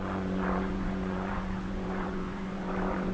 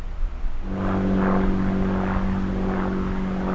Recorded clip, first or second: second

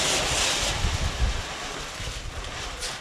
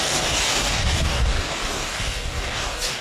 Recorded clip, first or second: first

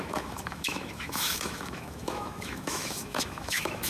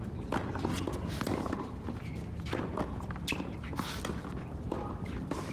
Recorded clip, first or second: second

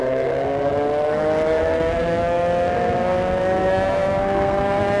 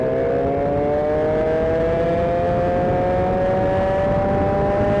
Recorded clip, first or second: second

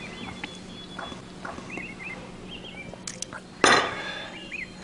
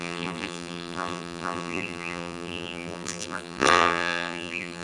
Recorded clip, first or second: first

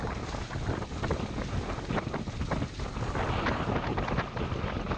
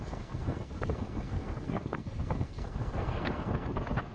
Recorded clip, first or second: first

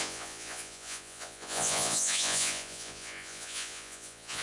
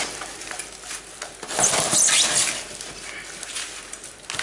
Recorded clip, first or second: second